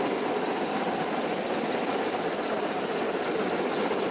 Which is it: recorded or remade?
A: recorded